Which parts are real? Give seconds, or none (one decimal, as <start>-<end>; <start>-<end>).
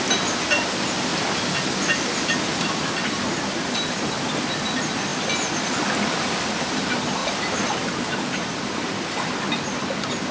0.0-7.2; 8.8-10.3